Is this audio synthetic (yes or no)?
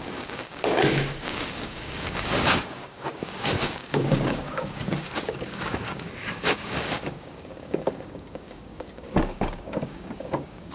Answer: yes